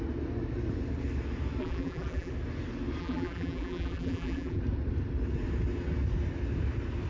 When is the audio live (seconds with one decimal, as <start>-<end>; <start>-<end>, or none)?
0.0-1.6; 2.3-3.0; 4.6-7.1